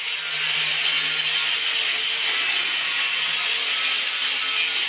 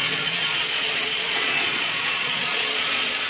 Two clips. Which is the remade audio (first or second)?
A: second